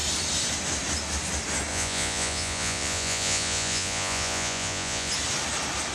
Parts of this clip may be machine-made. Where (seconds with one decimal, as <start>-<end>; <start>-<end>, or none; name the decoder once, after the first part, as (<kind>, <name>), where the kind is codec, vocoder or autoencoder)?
1.7-5.1 (vocoder, Vocos)